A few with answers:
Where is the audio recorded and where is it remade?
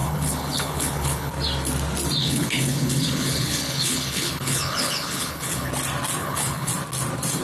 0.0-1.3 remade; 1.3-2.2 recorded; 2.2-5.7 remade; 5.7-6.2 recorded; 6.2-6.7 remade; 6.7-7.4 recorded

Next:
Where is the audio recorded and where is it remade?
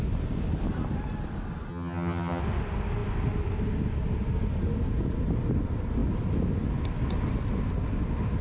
0.0-1.7 recorded; 1.7-2.4 remade; 2.4-8.4 recorded